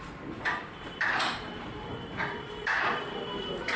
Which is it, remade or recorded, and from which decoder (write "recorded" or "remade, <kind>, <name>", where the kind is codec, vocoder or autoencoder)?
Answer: remade, vocoder, BigVGAN v2